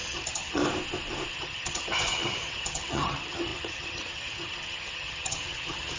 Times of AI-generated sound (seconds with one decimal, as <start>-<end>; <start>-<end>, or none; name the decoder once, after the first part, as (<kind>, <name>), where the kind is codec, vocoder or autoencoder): 0.0-0.6 (vocoder, HiFi-GAN); 1.3-6.0